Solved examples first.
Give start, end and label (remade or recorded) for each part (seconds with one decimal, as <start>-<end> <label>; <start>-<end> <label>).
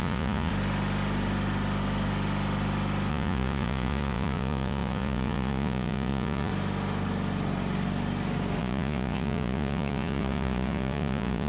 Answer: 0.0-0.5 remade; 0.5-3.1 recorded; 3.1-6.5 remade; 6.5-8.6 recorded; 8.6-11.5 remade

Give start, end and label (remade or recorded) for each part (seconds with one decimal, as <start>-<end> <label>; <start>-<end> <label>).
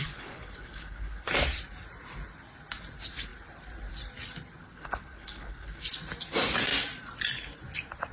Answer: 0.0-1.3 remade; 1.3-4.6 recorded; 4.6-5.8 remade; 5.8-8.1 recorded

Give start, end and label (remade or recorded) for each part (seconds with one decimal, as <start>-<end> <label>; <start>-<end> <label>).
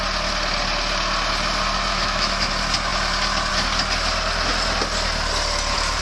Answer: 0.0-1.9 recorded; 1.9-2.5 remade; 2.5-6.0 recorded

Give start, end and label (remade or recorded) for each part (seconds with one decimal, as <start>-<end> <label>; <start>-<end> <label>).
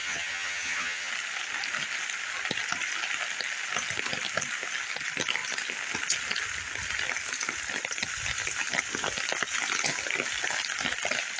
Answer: 0.0-1.1 remade; 1.1-11.4 recorded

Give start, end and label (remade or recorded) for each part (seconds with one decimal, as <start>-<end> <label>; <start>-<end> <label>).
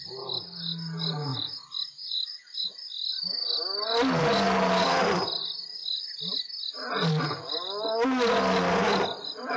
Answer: 0.0-9.6 recorded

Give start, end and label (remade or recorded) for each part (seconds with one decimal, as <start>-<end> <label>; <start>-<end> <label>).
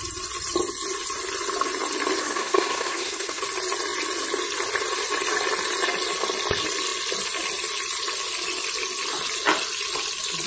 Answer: 0.0-2.2 recorded; 2.2-3.4 remade; 3.4-10.5 recorded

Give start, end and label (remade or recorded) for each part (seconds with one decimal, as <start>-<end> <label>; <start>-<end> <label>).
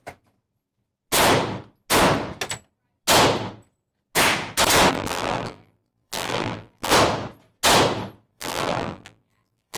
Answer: 0.0-4.9 recorded; 4.9-6.9 remade; 6.9-8.3 recorded; 8.3-9.8 remade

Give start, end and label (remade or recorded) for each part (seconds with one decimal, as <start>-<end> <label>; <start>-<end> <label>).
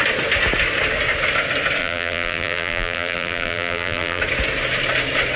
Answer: 0.0-1.8 recorded; 1.8-4.2 remade; 4.2-5.4 recorded